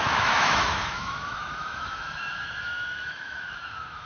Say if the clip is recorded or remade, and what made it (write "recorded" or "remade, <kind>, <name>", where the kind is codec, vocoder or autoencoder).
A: remade, autoencoder, DAC-VAE